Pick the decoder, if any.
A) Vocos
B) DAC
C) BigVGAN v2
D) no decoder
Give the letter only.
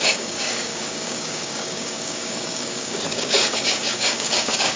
B